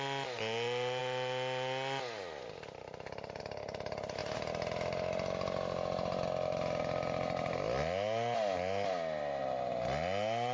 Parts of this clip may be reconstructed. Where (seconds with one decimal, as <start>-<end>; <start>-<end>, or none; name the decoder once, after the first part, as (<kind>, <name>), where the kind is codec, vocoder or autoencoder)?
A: none

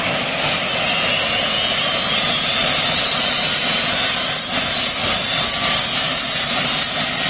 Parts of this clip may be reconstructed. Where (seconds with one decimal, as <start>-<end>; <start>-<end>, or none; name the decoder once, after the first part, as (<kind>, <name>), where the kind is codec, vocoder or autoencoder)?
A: 2.6-3.2 (vocoder, BigVGAN v2); 5.0-5.8